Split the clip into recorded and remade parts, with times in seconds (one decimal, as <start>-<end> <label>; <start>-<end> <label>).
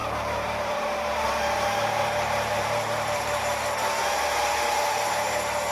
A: 0.0-3.4 remade; 3.4-5.7 recorded